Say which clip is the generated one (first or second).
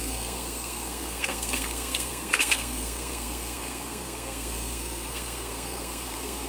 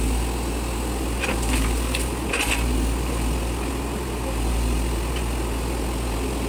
first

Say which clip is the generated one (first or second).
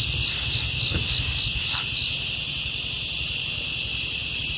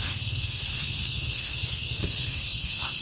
second